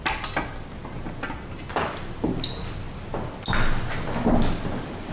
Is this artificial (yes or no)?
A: no